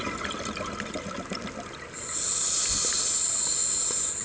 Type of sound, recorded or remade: recorded